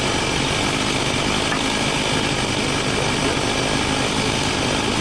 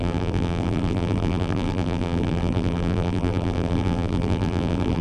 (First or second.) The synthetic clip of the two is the second